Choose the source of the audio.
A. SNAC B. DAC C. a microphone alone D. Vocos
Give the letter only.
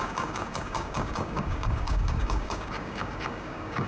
B